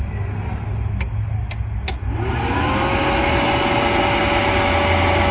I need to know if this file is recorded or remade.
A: recorded